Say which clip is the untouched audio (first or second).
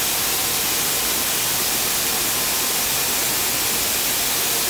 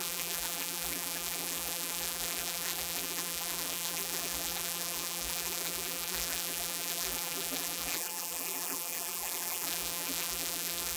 first